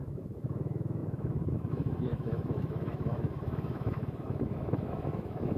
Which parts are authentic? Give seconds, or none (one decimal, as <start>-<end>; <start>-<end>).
none